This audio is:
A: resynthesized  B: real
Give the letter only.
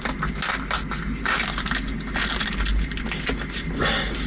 B